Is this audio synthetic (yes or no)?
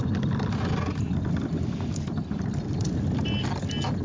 no